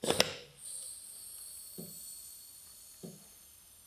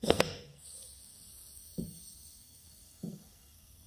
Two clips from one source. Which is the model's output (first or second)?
second